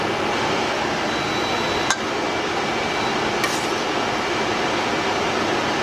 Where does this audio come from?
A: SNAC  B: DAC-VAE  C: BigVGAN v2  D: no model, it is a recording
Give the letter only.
D